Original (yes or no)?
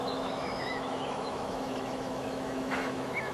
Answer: no